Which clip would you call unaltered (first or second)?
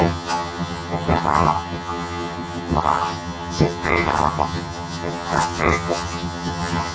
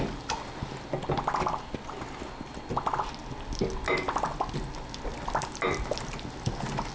second